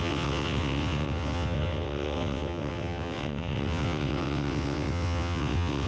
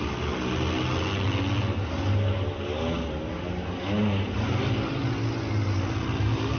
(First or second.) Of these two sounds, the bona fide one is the second